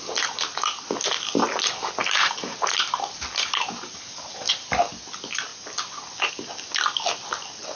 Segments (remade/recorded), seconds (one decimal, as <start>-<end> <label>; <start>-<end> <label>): 0.0-2.0 recorded; 2.0-4.5 remade; 4.5-7.8 recorded